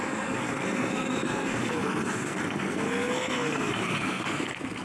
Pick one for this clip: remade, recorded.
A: remade